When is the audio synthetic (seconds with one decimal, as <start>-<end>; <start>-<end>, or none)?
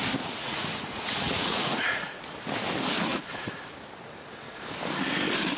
0.4-2.2; 3.1-3.6